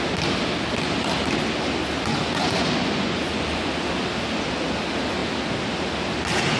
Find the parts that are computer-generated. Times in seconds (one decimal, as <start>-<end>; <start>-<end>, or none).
2.1-3.7